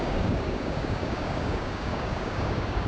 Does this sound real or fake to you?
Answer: fake